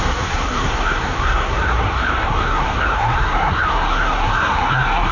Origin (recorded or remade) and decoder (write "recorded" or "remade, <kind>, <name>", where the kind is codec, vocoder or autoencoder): remade, codec, SNAC